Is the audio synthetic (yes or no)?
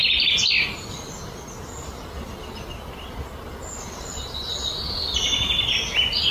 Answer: no